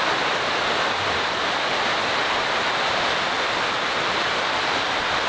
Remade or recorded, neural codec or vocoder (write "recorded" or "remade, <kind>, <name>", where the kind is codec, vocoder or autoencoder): recorded